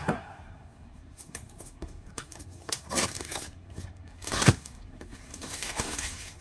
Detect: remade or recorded remade